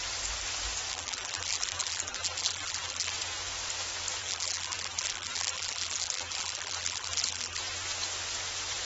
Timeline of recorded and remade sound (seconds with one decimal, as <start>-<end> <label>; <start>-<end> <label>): 0.0-0.9 recorded; 0.9-3.1 remade; 3.1-4.2 recorded; 4.2-7.6 remade; 7.6-8.8 recorded